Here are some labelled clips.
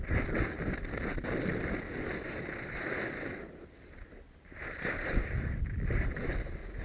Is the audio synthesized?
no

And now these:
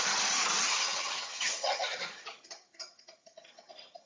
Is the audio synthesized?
yes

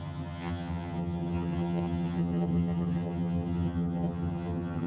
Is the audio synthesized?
yes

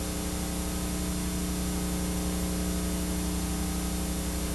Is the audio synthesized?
no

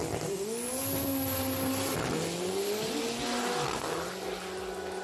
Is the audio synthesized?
no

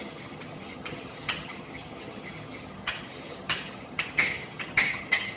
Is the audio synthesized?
yes